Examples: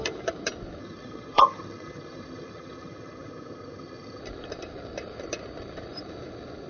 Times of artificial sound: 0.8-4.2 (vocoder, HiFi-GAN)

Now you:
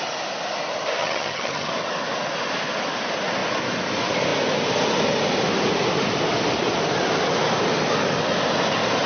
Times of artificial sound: 1.0-1.7 (vocoder, HiFi-GAN)